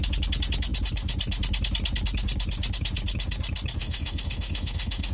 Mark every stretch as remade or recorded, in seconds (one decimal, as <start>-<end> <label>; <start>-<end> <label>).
0.0-3.8 recorded; 3.8-5.1 remade